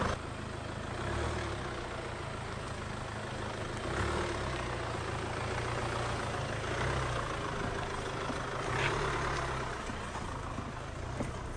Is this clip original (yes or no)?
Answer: yes